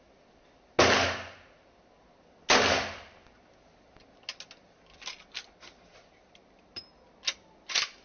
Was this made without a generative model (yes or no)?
yes